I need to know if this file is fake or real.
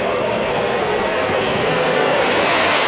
fake